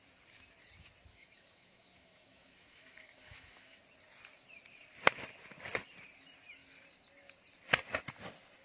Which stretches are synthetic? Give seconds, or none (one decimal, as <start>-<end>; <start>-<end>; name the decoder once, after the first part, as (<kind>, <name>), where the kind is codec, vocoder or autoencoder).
1.1-3.8 (autoencoder, DAC-VAE)